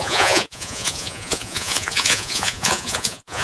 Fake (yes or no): yes